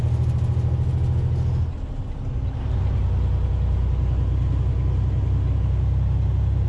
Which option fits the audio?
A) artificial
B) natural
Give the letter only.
B